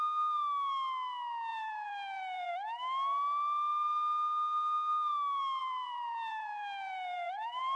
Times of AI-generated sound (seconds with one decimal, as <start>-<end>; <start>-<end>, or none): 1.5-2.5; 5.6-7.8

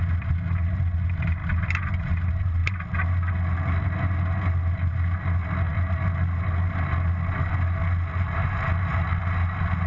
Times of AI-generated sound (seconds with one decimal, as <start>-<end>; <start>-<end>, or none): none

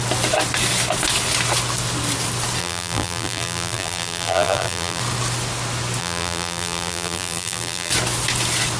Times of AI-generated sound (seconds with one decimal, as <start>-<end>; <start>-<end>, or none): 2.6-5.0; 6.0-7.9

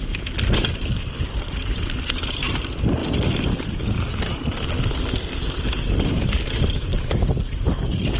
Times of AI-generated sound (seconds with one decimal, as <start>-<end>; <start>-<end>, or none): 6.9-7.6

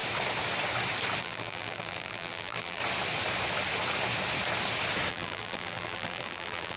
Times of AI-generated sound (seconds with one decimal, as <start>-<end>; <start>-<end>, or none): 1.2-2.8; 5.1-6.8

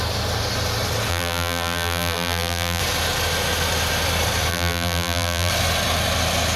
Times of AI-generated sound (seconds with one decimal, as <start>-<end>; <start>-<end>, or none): 1.1-2.8; 4.5-5.5

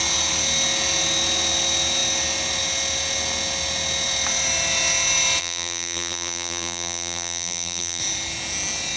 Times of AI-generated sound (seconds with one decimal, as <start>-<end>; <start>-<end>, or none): 5.4-8.0